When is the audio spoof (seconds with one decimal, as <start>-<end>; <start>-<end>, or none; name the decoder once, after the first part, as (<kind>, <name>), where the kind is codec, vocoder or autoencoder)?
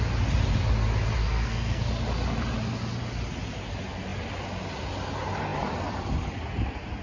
1.2-1.9 (codec, SNAC)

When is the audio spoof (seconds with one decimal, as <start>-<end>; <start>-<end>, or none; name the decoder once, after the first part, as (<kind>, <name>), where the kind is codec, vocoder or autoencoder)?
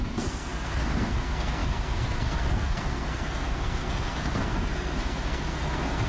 0.0-6.1 (codec, SNAC)